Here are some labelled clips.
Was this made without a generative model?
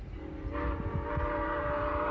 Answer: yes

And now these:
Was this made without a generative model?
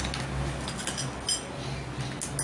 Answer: yes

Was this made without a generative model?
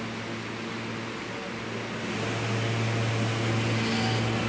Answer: yes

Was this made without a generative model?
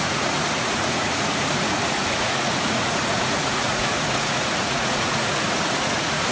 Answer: no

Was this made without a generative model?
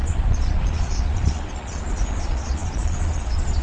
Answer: no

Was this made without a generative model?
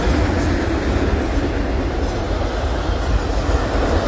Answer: yes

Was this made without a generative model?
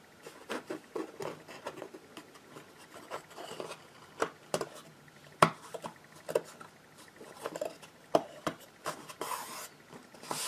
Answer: yes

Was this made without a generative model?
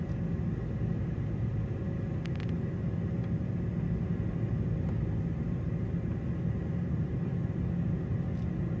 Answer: yes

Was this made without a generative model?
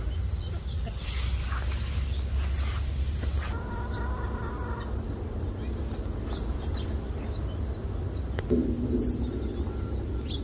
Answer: yes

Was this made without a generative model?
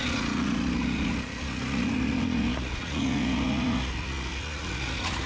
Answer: no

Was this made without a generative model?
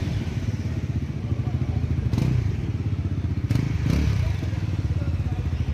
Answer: yes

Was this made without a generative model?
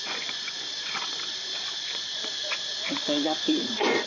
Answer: no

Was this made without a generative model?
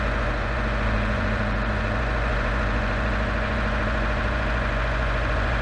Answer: no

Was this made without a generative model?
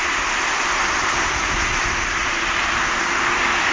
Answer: yes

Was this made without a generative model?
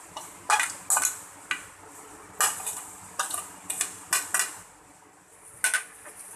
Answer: yes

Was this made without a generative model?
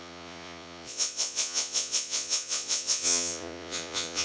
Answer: no